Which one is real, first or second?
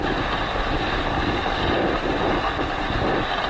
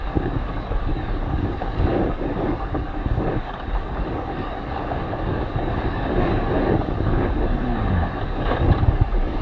first